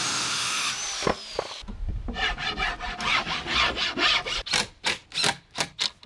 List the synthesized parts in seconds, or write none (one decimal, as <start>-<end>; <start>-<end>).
0.0-0.7